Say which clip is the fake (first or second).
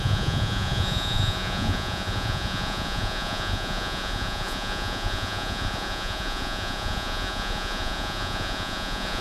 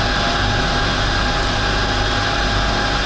first